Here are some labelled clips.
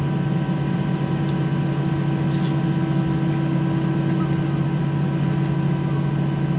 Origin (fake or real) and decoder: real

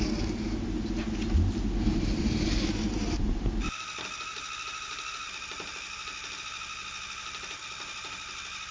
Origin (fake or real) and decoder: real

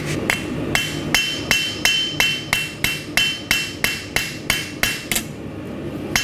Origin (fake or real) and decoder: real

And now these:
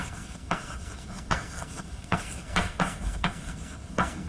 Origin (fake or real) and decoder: fake, codec, SNAC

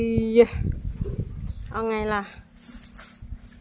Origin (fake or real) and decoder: real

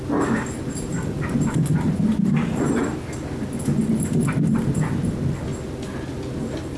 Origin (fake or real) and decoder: real